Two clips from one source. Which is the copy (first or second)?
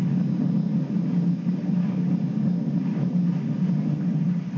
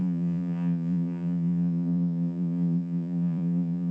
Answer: second